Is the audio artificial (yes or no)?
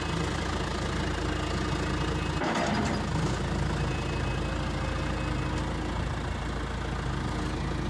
no